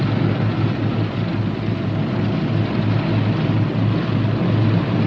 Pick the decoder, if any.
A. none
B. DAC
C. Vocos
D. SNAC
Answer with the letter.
A